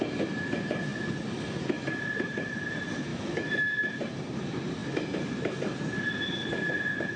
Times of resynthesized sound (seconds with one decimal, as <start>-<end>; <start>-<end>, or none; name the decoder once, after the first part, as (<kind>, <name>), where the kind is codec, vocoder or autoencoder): 3.1-3.7 (autoencoder, DAC-VAE)